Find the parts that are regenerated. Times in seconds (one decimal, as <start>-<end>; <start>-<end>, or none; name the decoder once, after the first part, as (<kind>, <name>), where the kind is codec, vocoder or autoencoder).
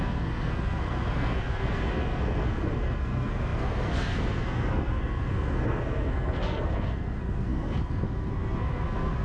0.0-9.2 (codec, SNAC)